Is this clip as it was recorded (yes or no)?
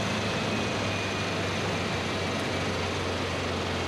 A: yes